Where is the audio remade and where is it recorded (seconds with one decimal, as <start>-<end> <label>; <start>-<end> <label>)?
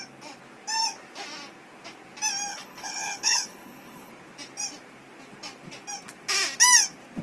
0.0-2.5 recorded; 2.5-4.1 remade; 4.1-7.2 recorded